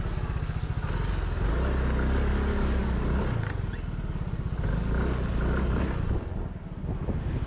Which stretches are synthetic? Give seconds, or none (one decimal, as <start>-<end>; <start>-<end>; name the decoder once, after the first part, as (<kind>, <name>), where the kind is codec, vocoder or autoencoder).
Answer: 2.3-3.0 (codec, DAC)